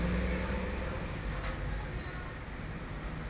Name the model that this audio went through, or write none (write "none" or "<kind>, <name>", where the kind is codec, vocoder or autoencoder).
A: none